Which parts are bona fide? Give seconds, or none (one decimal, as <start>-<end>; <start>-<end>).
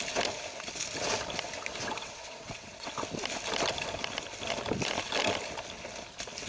0.0-1.8; 2.9-6.5